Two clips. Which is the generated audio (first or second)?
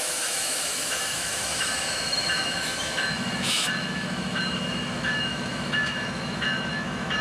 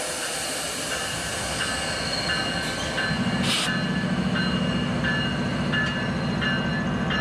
first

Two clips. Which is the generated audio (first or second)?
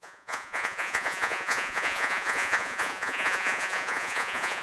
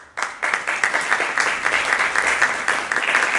first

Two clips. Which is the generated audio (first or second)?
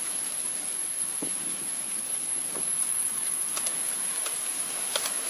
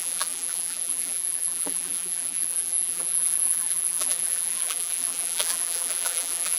second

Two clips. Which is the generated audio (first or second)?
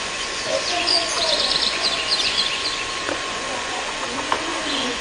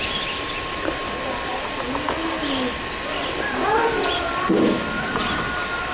first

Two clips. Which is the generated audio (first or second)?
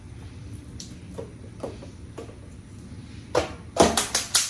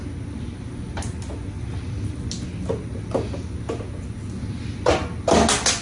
first